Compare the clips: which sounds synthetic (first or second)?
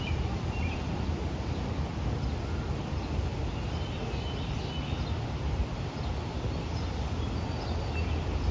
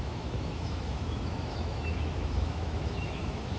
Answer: second